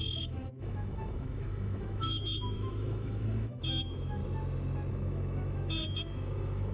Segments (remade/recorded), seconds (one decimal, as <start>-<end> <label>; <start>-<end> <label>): 0.0-4.2 remade; 4.2-4.9 recorded; 4.9-6.7 remade